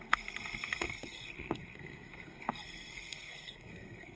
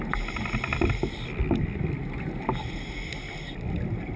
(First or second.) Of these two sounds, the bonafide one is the second